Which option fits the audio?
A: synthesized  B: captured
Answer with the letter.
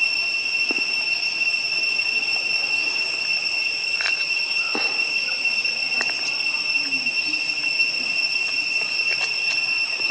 B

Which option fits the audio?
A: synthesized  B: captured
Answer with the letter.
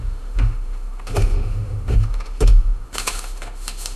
A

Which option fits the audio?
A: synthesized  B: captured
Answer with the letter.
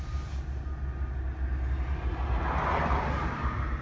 B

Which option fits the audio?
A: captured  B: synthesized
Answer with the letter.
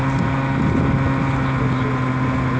A